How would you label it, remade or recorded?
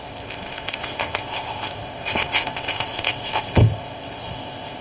remade